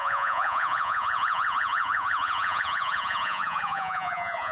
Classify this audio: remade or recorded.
remade